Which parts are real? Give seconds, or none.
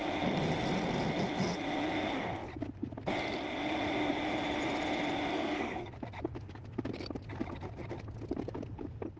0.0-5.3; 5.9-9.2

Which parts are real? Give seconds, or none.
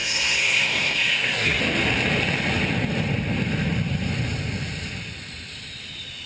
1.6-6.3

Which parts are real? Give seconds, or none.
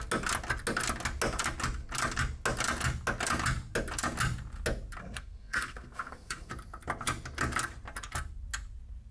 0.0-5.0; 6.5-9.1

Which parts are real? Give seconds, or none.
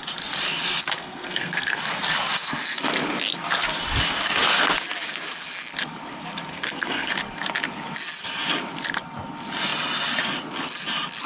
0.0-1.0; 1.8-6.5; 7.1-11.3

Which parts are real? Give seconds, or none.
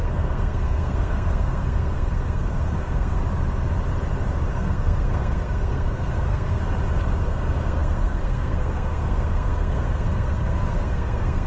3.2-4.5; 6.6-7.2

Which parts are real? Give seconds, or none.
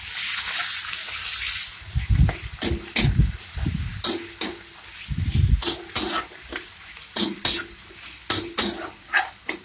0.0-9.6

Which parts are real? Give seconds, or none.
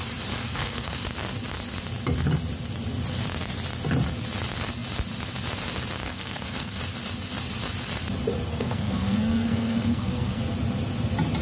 0.0-0.4; 1.0-6.1; 6.8-8.5; 10.4-11.4